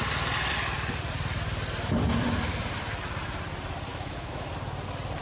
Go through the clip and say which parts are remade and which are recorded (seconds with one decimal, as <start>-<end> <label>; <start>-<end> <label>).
0.0-3.9 recorded; 3.9-4.5 remade; 4.5-5.2 recorded